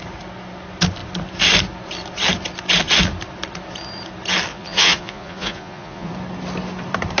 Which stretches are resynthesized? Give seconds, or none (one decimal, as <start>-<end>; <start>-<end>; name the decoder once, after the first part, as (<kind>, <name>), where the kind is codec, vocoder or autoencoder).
4.5-6.1 (vocoder, Vocos)